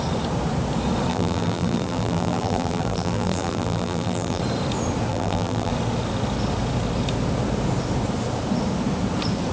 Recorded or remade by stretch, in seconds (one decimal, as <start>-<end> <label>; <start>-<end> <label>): 0.0-1.1 recorded; 1.1-4.4 remade; 4.4-5.1 recorded; 5.1-5.7 remade; 5.7-9.5 recorded